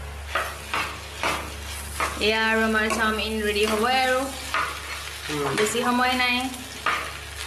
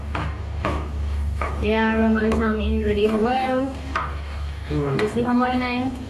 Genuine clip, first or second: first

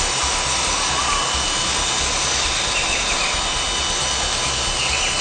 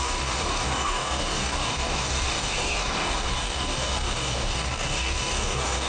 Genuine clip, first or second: first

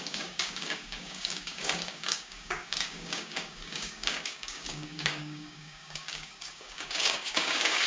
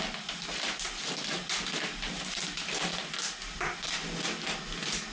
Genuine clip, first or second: second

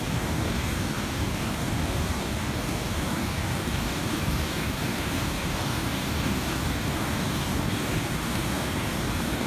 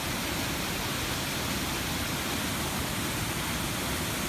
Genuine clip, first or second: second